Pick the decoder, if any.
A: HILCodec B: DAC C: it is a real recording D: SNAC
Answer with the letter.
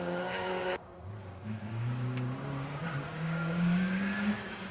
B